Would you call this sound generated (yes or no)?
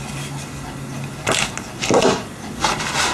no